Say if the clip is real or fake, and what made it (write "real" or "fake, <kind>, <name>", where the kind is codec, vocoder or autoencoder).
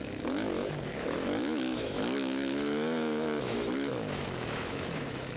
fake, autoencoder, DAC-VAE